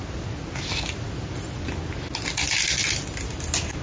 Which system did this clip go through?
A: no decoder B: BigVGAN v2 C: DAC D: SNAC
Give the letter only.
A